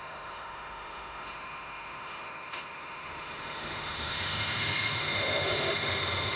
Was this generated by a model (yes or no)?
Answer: yes